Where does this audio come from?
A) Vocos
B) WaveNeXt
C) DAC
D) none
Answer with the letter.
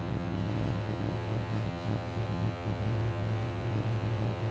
B